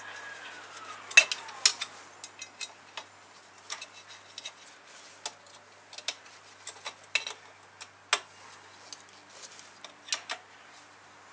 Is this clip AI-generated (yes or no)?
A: no